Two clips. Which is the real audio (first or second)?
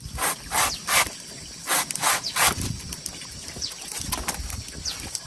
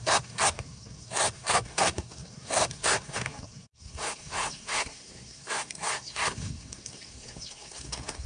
first